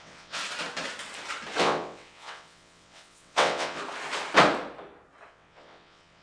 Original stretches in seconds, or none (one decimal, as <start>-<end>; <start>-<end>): 0.4-1.6; 3.8-5.3